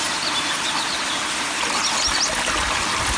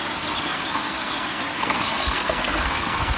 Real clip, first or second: first